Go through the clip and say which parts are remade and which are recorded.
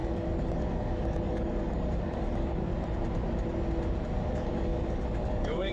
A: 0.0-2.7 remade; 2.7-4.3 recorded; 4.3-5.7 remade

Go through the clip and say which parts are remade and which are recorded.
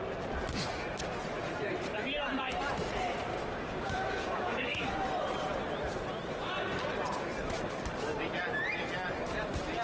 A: 0.0-3.3 recorded; 3.3-4.9 remade; 4.9-9.8 recorded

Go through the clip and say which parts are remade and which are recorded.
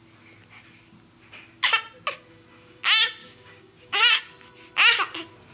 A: 0.0-3.2 recorded; 3.2-4.2 remade; 4.2-5.5 recorded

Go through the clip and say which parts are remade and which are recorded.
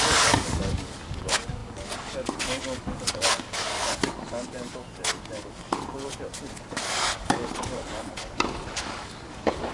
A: 0.0-6.1 remade; 6.1-6.7 recorded; 6.7-9.7 remade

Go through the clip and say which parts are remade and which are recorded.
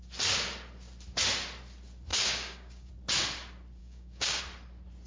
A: 0.0-2.1 recorded; 2.1-2.9 remade; 2.9-3.8 recorded; 3.8-4.4 remade; 4.4-5.1 recorded